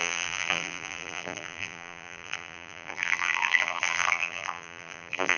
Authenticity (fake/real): fake